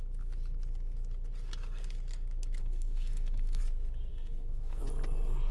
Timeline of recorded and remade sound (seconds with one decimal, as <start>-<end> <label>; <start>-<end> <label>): 0.0-2.6 recorded; 2.6-3.6 remade; 3.6-4.1 recorded; 4.1-4.8 remade; 4.8-5.5 recorded